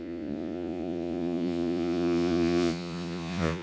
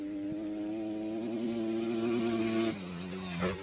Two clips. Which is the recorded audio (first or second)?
second